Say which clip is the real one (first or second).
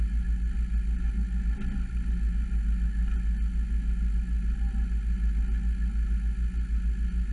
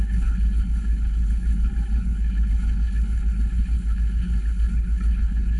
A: first